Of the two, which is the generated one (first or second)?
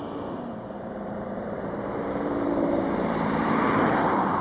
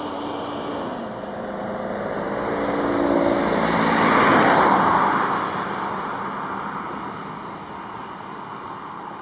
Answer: first